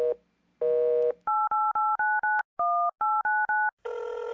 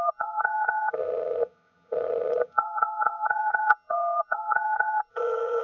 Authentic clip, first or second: first